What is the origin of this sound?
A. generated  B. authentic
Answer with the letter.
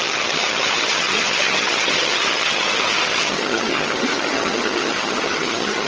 A